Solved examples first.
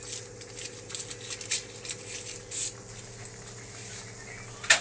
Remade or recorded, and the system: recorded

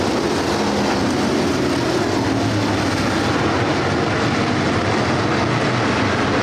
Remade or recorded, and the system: recorded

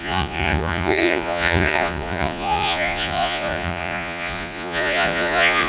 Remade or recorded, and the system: remade, vocoder, Vocos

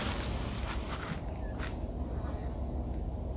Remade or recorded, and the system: recorded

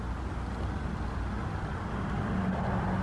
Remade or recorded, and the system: recorded